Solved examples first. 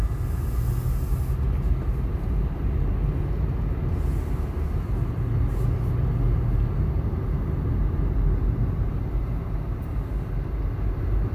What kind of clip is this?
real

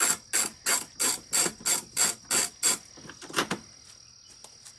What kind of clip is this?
real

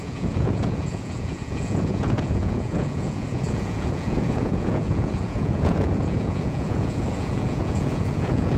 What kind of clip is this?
fake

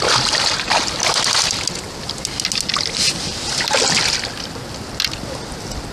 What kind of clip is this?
real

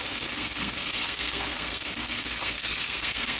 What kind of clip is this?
fake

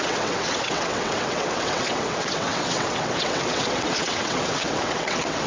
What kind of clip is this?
fake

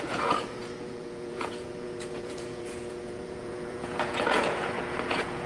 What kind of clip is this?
fake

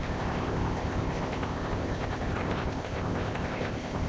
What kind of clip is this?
fake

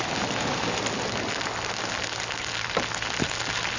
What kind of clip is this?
real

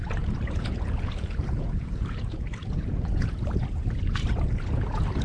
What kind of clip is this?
fake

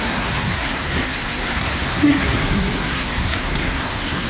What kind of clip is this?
fake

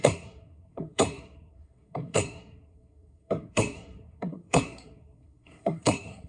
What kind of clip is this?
fake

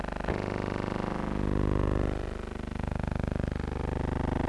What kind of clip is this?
real